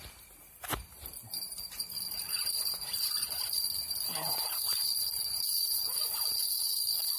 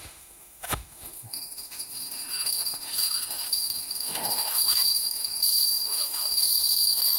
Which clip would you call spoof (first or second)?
second